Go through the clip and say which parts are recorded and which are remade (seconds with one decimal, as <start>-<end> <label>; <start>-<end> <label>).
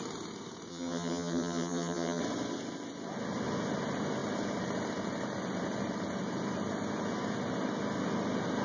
0.0-0.7 recorded; 0.7-2.2 remade; 2.2-8.6 recorded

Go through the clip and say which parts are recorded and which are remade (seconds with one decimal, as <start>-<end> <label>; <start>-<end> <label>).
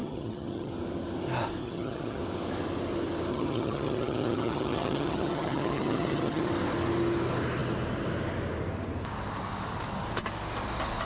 0.0-0.7 remade; 0.7-1.6 recorded; 1.6-2.2 remade; 2.2-3.3 recorded; 3.3-6.5 remade; 6.5-11.1 recorded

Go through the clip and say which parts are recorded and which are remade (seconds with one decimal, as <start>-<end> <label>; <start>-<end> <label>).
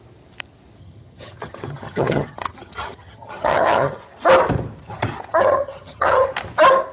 0.0-0.8 recorded; 0.8-4.0 remade; 4.0-5.3 recorded; 5.3-6.3 remade; 6.3-6.9 recorded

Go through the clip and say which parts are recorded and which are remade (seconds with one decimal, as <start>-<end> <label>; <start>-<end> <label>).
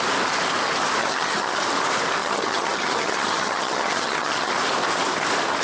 0.0-1.0 recorded; 1.0-1.6 remade; 1.6-2.2 recorded; 2.2-4.5 remade; 4.5-5.6 recorded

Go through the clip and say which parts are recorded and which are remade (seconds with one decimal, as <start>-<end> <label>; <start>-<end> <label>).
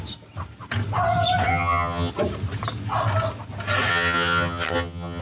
0.0-1.5 recorded; 1.5-2.1 remade; 2.1-3.9 recorded; 3.9-5.2 remade